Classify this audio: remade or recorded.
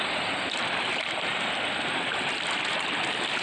recorded